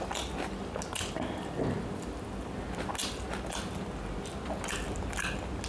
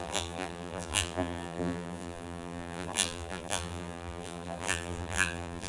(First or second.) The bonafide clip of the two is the first